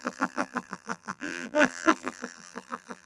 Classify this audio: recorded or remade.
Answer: remade